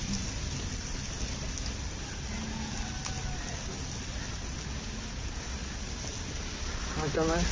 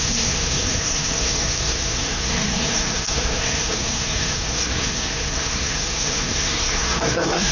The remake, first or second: second